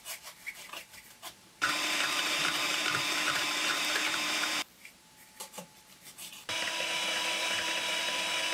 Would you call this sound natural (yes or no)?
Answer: no